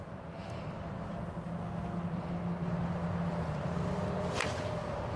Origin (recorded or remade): recorded